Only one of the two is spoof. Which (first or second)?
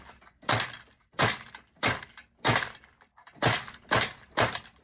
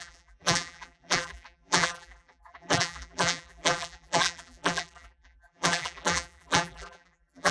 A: second